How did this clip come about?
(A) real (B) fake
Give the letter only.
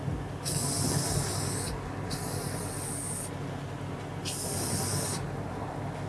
A